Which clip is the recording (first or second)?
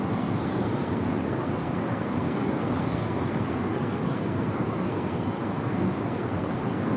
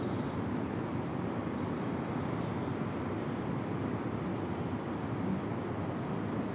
second